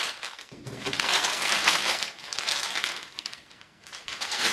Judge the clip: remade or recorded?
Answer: remade